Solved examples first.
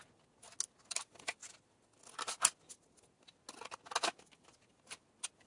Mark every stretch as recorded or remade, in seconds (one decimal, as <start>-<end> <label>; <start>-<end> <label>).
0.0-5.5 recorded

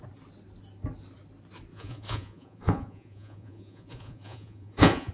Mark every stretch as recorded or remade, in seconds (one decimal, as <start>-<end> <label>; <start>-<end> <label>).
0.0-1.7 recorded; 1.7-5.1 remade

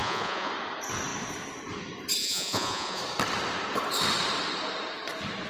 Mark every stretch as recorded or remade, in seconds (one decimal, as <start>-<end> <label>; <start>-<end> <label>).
0.0-0.5 remade; 0.5-2.2 recorded; 2.2-3.0 remade; 3.0-5.5 recorded

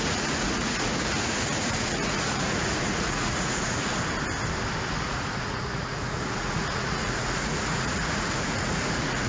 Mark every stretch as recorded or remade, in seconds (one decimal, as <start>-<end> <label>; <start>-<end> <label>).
0.0-3.9 remade; 3.9-5.0 recorded; 5.0-9.3 remade

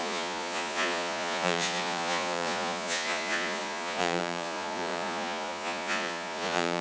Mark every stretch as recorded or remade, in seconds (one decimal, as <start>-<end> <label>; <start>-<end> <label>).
0.0-6.8 remade

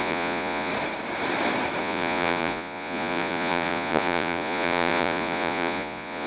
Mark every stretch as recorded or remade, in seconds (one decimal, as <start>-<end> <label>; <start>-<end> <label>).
0.0-0.7 remade; 0.7-1.8 recorded; 1.8-6.3 remade